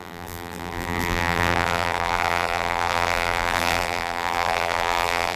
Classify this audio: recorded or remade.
remade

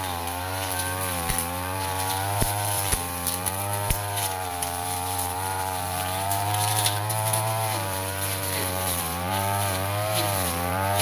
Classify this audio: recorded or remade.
remade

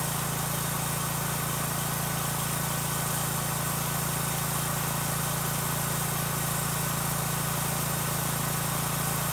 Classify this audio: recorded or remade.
recorded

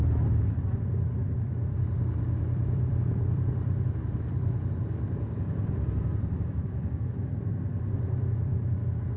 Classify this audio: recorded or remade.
remade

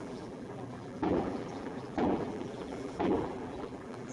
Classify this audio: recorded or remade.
remade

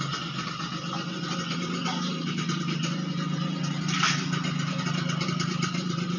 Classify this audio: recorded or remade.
recorded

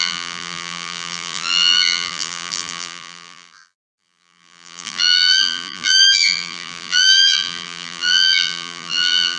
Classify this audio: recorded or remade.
remade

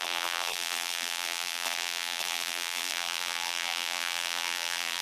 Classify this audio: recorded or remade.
remade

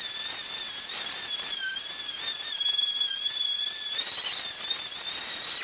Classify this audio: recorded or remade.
recorded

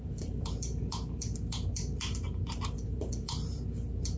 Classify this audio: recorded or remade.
remade